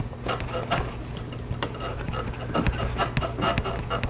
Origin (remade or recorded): recorded